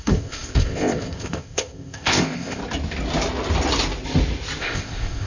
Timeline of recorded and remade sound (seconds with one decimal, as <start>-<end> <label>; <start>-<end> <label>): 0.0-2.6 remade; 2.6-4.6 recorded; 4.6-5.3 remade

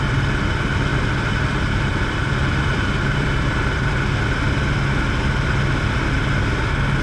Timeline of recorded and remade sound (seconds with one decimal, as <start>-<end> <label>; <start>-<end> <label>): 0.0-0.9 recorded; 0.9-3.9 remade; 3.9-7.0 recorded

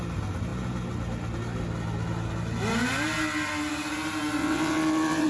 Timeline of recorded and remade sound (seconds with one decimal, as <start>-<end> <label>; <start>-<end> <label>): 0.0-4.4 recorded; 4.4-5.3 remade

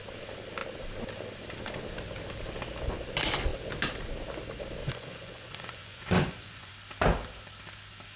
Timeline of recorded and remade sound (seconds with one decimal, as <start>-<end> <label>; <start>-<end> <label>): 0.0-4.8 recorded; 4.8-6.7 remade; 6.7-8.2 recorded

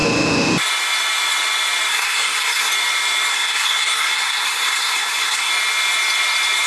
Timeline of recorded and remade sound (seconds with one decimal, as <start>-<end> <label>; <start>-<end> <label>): 0.0-1.9 recorded; 1.9-2.7 remade; 2.7-3.3 recorded; 3.3-5.5 remade; 5.5-6.7 recorded

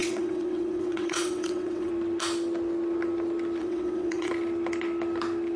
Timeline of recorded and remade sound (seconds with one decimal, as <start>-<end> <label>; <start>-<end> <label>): 0.0-1.9 remade; 1.9-3.6 recorded; 3.6-4.3 remade; 4.3-5.6 recorded